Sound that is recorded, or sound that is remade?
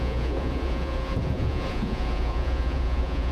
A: remade